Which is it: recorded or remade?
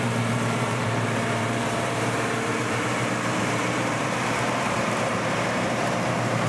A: remade